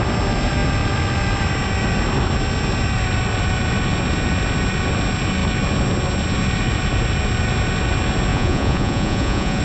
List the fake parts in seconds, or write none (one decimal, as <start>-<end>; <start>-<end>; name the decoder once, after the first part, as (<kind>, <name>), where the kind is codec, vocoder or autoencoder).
8.3-9.6 (vocoder, Vocos)

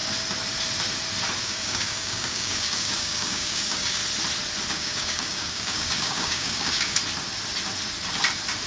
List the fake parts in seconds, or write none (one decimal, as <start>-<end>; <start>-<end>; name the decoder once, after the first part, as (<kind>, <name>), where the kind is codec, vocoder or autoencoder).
1.4-4.0 (codec, DAC); 4.7-7.0

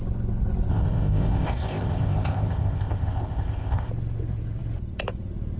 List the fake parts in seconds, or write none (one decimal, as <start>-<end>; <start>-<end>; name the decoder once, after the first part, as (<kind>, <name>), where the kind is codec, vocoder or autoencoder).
0.7-3.9 (codec, ZipCodec)

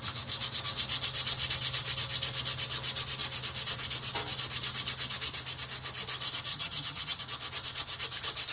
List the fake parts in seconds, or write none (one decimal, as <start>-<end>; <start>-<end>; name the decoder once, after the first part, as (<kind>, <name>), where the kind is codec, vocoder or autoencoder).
6.5-7.2 (vocoder, HiFi-GAN)